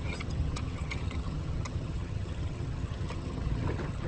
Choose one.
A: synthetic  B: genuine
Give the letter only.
A